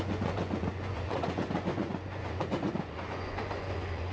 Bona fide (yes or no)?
no